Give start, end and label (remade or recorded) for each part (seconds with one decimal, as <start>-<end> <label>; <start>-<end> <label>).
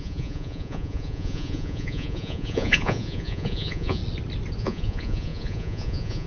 0.0-4.0 remade; 4.0-4.6 recorded; 4.6-6.3 remade